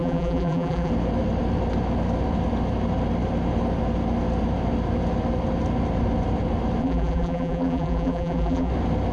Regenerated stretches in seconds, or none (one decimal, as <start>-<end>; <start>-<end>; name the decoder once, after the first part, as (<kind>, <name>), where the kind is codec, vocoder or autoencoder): 0.0-0.9 (vocoder, BigVGAN v2); 6.8-8.7